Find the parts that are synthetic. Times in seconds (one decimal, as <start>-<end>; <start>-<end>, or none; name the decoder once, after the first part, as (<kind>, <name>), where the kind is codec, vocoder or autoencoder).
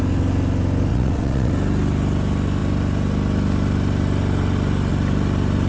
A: 0.9-1.5 (vocoder, WaveNeXt)